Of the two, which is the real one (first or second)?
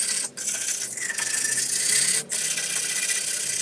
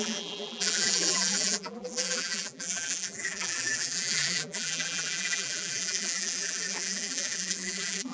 first